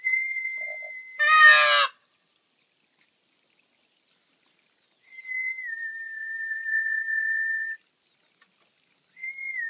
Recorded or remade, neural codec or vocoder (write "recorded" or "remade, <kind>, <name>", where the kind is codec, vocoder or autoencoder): recorded